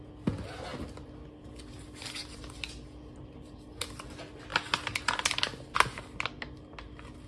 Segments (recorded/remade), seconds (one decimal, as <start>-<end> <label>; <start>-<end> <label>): 0.0-7.3 recorded